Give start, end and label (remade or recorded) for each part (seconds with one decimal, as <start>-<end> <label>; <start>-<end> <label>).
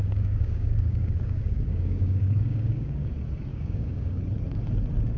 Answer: 0.0-3.1 remade; 3.1-3.5 recorded; 3.5-4.2 remade; 4.2-5.2 recorded